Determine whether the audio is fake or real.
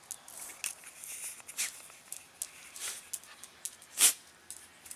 real